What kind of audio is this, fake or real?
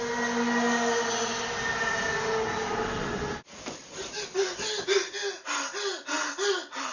real